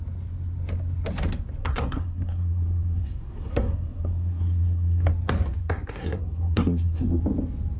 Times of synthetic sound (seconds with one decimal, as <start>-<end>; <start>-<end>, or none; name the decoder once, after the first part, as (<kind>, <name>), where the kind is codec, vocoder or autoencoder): 1.6-5.1 (codec, SNAC); 5.6-7.2